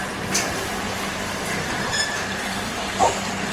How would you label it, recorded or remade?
recorded